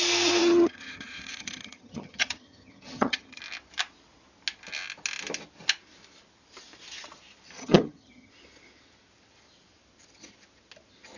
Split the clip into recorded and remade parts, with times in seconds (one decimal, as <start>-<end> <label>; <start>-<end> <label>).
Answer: 0.0-0.4 recorded; 0.4-3.4 remade; 3.4-7.6 recorded; 7.6-8.3 remade; 8.3-11.2 recorded